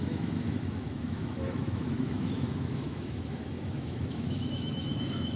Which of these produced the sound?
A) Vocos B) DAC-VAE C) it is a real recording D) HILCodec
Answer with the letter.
B